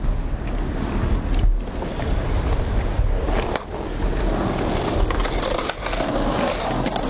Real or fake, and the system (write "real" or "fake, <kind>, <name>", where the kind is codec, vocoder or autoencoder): real